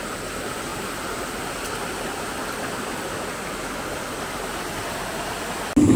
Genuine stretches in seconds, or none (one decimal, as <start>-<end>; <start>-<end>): 0.0-6.0